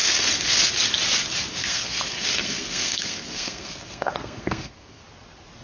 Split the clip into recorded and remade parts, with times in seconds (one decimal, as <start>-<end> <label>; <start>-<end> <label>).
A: 0.0-0.7 remade; 0.7-1.6 recorded; 1.6-5.0 remade; 5.0-5.6 recorded

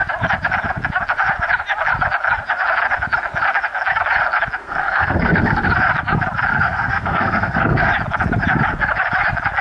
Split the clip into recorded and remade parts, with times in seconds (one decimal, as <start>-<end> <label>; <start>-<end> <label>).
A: 0.0-4.6 recorded; 4.6-5.7 remade; 5.7-6.5 recorded; 6.5-7.9 remade; 7.9-9.6 recorded

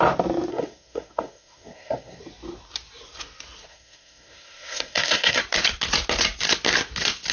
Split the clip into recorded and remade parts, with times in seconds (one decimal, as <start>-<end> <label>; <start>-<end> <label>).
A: 0.0-0.5 recorded; 0.5-2.2 remade; 2.2-3.7 recorded; 3.7-5.4 remade; 5.4-7.3 recorded

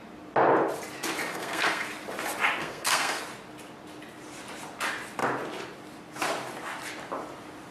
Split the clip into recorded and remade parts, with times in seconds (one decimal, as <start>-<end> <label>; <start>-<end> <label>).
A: 0.0-1.3 recorded; 1.3-1.9 remade; 1.9-2.6 recorded; 2.6-3.2 remade; 3.2-7.7 recorded

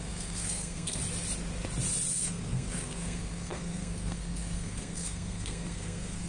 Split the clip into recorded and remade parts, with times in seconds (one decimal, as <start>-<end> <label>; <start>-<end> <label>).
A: 0.0-1.0 remade; 1.0-2.1 recorded; 2.1-6.3 remade

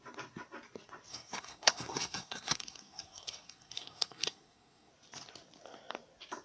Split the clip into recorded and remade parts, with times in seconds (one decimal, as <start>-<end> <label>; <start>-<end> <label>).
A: 0.0-1.1 recorded; 1.1-4.9 remade; 4.9-6.4 recorded

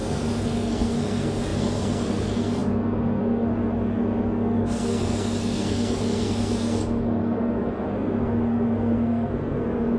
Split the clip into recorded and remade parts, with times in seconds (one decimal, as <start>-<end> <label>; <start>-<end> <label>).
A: 0.0-10.0 remade